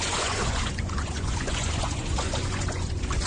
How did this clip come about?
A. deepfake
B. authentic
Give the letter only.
A